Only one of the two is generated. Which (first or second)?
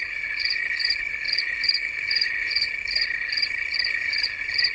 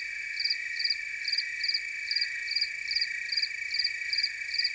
first